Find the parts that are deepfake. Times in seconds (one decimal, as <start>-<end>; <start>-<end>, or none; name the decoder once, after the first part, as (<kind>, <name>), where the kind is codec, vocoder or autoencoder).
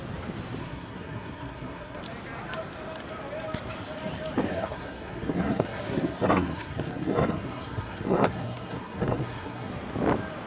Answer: 0.6-2.0 (codec, SNAC); 4.5-9.7